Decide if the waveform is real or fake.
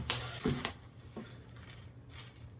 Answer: real